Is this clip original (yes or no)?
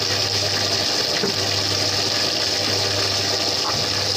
yes